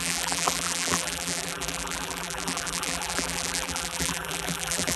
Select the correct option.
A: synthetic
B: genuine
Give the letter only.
A